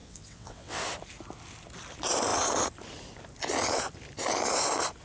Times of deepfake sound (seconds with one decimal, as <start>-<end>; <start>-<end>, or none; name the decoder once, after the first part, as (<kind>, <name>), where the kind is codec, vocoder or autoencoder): 0.0-0.8 (vocoder, WaveNeXt)